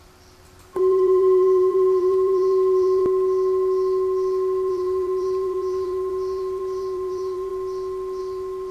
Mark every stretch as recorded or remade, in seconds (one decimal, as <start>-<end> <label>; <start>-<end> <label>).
0.0-3.0 remade; 3.0-4.7 recorded; 4.7-7.5 remade; 7.5-8.2 recorded; 8.2-8.7 remade